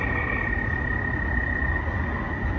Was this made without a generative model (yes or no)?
yes